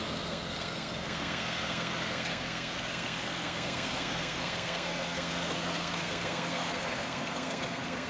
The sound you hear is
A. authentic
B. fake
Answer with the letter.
B